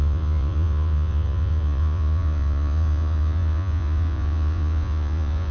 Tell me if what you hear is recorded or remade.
remade